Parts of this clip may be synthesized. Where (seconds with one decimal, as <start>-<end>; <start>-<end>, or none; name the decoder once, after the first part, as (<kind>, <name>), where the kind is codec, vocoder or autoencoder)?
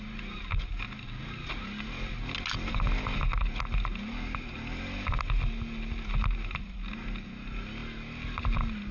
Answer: none